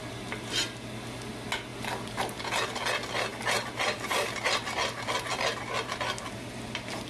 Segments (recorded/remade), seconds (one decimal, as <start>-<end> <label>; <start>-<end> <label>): 0.0-7.1 recorded